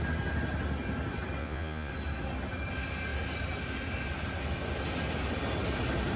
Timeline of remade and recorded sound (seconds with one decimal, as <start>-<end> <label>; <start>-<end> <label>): 0.0-1.4 recorded; 1.4-1.9 remade; 1.9-6.2 recorded